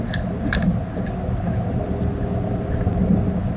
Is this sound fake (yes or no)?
no